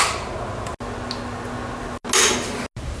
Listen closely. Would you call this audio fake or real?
real